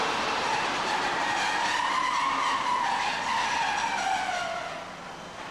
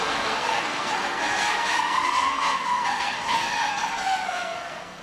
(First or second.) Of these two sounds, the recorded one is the first